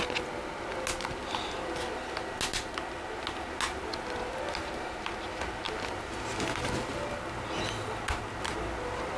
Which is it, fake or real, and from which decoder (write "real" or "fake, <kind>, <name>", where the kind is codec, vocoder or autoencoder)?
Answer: real